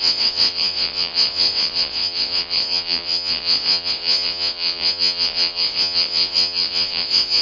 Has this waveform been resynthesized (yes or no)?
yes